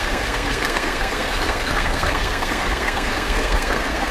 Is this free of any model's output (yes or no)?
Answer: no